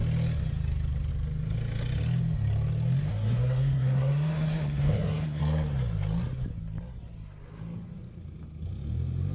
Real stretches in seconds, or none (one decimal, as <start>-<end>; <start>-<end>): 0.0-3.1; 5.4-9.3